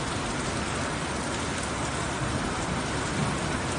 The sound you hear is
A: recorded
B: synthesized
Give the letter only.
A